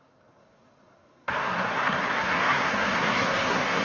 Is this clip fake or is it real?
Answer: fake